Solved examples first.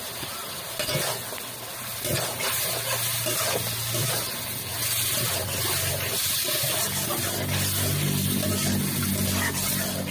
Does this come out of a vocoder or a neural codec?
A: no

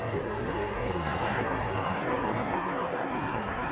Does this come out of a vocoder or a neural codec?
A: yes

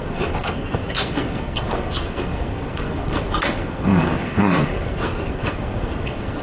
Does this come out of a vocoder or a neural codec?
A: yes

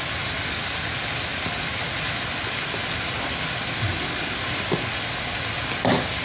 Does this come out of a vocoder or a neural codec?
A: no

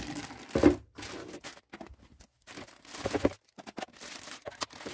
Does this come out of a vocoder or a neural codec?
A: no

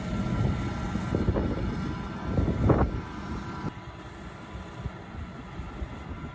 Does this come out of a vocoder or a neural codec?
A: no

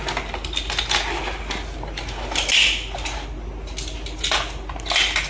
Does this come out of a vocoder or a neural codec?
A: no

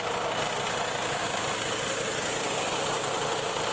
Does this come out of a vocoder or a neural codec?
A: no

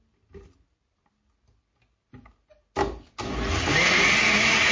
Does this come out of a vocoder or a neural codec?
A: no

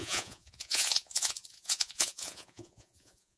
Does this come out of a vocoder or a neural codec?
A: yes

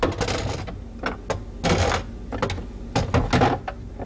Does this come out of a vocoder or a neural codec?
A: no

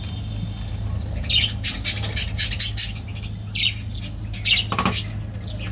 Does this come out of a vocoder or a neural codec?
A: no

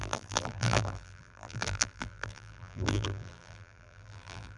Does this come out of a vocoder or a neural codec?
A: yes